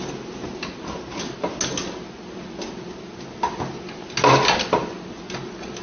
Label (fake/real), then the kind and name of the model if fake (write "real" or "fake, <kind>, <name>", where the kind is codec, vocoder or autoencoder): real